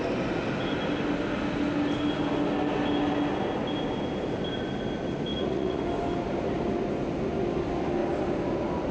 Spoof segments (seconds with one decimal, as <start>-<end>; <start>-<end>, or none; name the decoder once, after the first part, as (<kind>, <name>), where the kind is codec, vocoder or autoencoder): 5.3-5.8 (vocoder, Vocos)